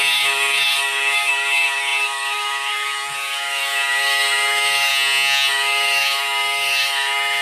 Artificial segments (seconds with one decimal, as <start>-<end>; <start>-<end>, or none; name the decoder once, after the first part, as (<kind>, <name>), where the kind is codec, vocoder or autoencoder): 0.0-4.9 (autoencoder, DAC-VAE); 5.5-7.4